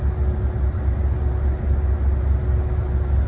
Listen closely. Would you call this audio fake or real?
real